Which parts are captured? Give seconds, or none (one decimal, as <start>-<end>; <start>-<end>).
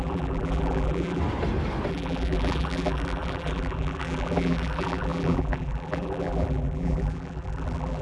1.2-1.9